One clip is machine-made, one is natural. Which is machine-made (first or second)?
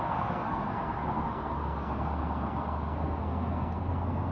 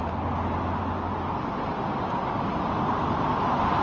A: first